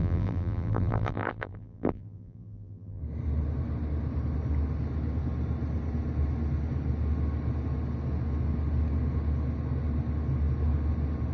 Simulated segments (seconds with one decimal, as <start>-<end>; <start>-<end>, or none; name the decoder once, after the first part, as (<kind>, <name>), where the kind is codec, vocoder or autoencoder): 0.0-3.0 (vocoder, BigVGAN v2)